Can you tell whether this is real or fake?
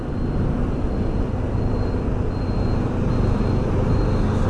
real